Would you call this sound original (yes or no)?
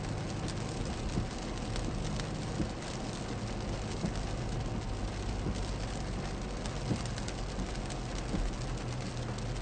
yes